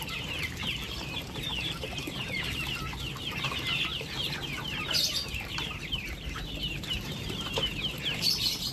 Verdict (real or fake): fake